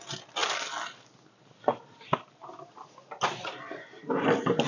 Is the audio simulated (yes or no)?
no